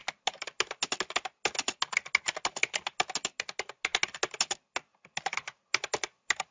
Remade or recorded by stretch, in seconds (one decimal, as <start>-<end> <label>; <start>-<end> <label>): 0.0-6.5 recorded